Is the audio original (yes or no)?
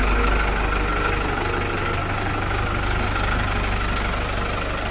yes